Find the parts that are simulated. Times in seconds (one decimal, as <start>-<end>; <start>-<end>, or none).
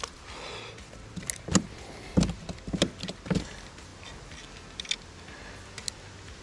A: none